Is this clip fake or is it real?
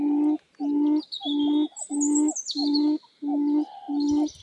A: real